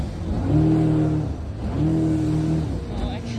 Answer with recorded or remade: recorded